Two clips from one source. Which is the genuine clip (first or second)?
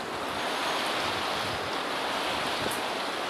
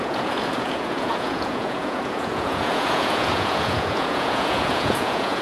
first